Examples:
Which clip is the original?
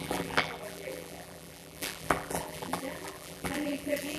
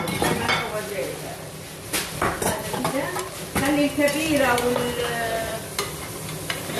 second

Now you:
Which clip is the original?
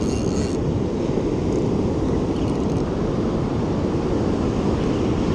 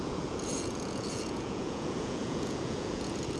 first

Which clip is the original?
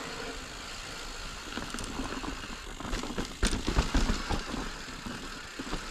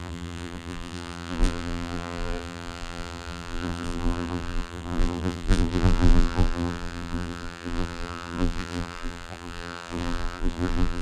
first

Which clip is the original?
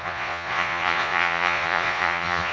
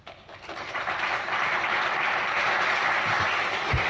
second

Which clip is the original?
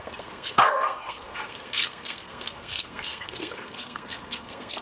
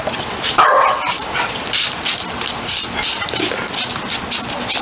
second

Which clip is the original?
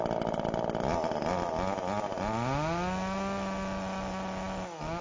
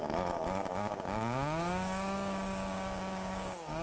first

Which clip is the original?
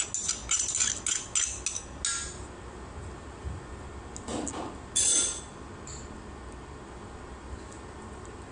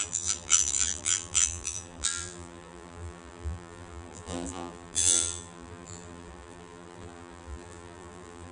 first